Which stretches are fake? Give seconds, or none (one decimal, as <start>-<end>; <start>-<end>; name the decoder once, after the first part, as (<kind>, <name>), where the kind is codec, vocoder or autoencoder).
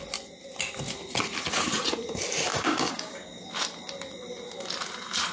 2.5-3.5 (codec, DAC)